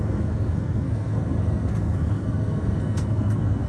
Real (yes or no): no